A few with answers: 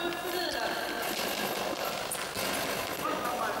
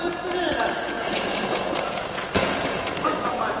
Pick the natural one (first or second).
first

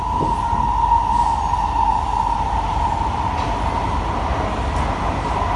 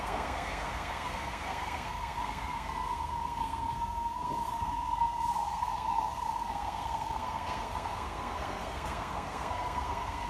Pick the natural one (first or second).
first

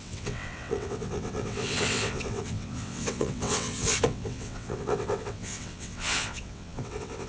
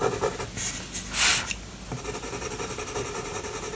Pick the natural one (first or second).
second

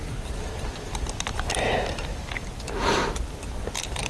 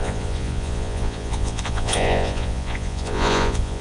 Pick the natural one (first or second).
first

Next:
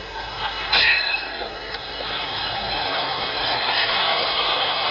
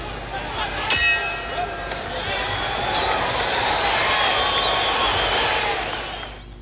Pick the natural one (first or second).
second